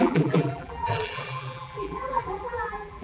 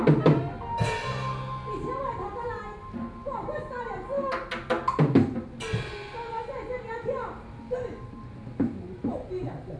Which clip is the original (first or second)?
second